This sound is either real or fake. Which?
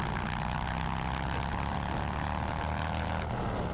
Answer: real